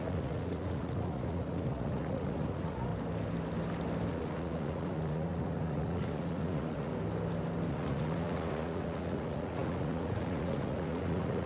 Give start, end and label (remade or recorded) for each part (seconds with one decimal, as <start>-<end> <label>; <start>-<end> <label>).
0.0-2.9 remade; 2.9-4.1 recorded; 4.1-6.9 remade; 6.9-7.7 recorded; 7.7-11.5 remade